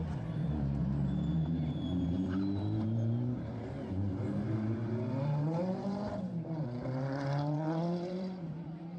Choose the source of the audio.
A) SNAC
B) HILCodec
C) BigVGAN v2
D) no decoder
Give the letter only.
C